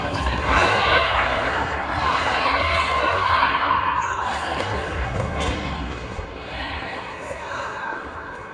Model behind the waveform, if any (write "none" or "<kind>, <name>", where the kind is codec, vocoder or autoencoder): codec, SNAC